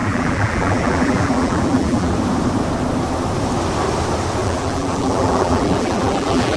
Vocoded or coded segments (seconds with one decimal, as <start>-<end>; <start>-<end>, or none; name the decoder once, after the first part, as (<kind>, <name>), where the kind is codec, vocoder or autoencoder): 0.0-2.1 (vocoder, BigVGAN v2); 4.4-6.6